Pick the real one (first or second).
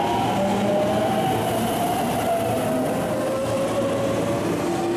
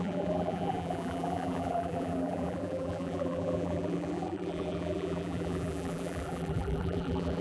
first